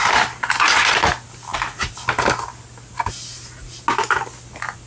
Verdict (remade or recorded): recorded